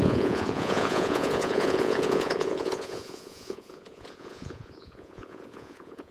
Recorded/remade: remade